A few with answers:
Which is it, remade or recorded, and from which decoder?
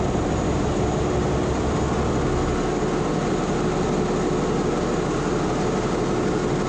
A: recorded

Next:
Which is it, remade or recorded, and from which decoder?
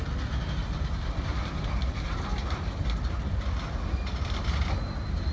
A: recorded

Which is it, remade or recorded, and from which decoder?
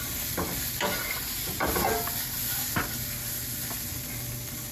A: recorded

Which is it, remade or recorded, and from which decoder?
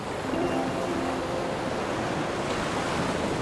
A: recorded